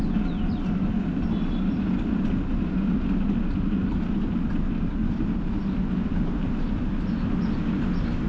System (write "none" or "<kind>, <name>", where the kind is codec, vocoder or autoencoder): none